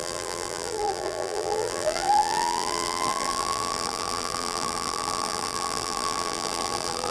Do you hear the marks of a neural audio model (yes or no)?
yes